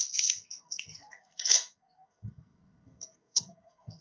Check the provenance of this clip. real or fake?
fake